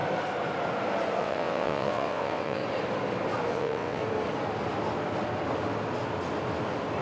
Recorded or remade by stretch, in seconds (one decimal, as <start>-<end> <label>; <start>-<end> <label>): 0.0-1.2 recorded; 1.2-2.6 remade; 2.6-3.5 recorded; 3.5-4.0 remade; 4.0-7.0 recorded